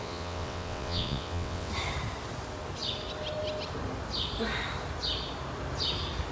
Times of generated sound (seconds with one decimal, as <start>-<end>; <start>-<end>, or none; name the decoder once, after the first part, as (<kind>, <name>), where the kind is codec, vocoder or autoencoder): 0.0-1.7 (vocoder, WaveNeXt)